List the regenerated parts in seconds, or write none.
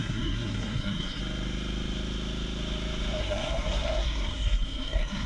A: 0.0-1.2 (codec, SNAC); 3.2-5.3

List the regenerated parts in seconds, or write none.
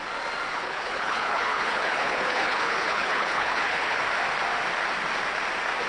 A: 0.5-4.0 (codec, HILCodec)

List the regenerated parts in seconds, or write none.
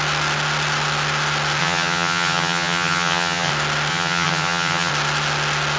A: 1.6-3.5 (vocoder, HiFi-GAN); 3.9-4.9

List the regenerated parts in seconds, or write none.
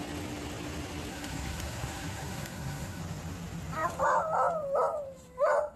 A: 1.1-3.0 (codec, SNAC)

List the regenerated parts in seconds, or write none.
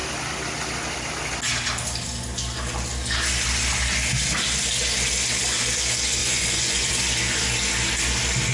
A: 6.2-6.9 (vocoder, Vocos)